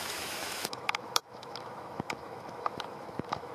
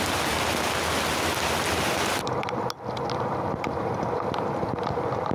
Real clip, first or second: second